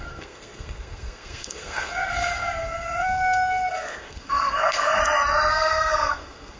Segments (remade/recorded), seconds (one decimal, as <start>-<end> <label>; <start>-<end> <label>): 0.0-5.0 remade; 5.0-5.5 recorded; 5.5-6.6 remade